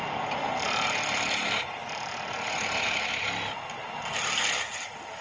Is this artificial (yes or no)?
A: no